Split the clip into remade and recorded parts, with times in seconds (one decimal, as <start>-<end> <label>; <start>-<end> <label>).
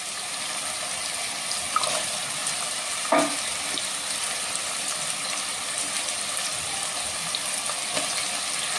0.0-2.4 recorded; 2.4-5.8 remade; 5.8-8.8 recorded